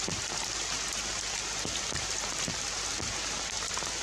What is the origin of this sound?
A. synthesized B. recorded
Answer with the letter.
B